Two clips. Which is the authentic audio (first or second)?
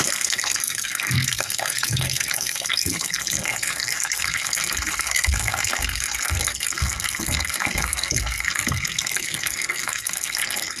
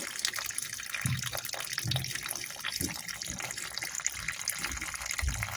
second